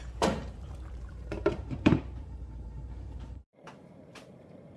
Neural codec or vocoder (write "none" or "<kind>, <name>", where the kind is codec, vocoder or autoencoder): vocoder, BigVGAN v2